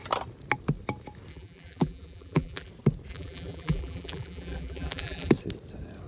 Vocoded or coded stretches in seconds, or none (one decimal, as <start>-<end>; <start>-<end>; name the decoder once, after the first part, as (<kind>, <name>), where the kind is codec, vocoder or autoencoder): 1.3-2.7 (vocoder, BigVGAN v2); 3.1-5.3